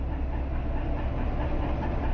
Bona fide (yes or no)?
yes